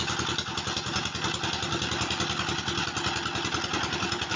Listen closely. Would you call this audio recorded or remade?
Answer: recorded